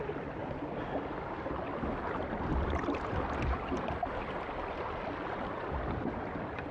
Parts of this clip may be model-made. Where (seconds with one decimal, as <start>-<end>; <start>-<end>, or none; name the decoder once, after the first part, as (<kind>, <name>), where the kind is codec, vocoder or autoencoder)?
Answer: none